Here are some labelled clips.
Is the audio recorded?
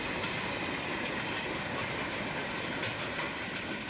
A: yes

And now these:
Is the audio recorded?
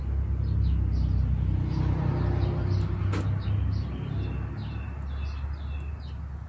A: yes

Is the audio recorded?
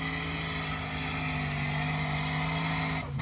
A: yes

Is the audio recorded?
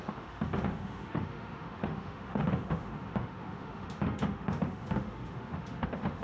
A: no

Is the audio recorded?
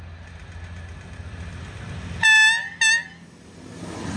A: yes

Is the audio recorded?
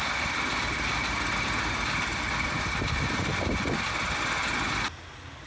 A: yes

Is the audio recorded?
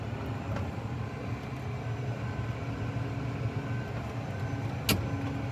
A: yes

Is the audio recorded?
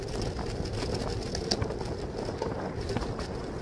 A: yes